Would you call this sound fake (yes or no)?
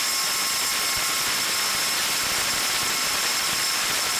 no